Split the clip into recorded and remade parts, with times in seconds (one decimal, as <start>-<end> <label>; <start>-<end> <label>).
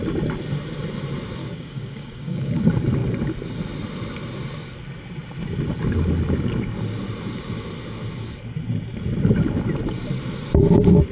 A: 0.0-1.4 recorded; 1.4-2.6 remade; 2.6-11.1 recorded